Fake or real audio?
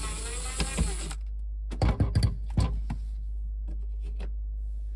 real